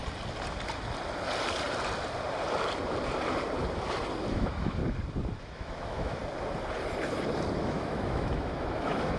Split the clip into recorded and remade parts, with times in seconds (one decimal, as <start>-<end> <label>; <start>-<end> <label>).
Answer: 0.0-4.3 recorded; 4.3-4.8 remade; 4.8-5.4 recorded; 5.4-6.2 remade; 6.2-7.6 recorded; 7.6-9.2 remade